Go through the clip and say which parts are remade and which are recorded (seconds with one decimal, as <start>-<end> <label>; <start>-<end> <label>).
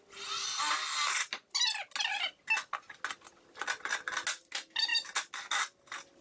0.0-6.2 recorded